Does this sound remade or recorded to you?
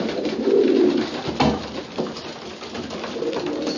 recorded